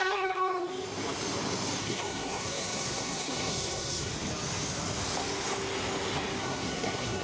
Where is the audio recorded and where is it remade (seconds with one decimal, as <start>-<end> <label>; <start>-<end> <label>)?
0.0-0.7 remade; 0.7-1.8 recorded; 1.8-4.1 remade; 4.1-6.4 recorded; 6.4-7.2 remade